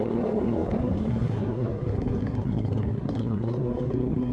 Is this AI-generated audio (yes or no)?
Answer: yes